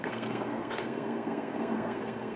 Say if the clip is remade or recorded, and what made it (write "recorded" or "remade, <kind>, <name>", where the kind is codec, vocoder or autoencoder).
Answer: remade, codec, SNAC